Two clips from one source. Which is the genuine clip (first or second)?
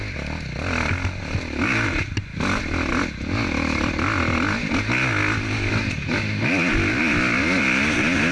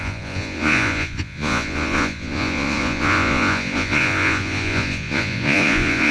first